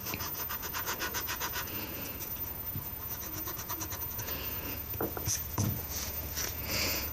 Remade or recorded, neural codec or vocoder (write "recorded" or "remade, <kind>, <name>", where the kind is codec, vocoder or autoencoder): remade, vocoder, Vocos